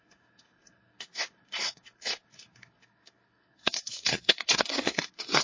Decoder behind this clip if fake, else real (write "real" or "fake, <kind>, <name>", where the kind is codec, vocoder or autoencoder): fake, codec, SNAC